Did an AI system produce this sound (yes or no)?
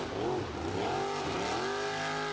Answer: no